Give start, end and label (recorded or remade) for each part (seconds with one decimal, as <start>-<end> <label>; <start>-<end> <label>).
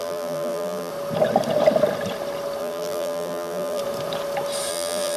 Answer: 0.0-0.9 remade; 0.9-2.6 recorded; 2.6-3.8 remade; 3.8-4.7 recorded; 4.7-5.2 remade